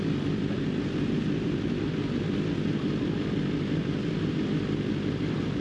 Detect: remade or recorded recorded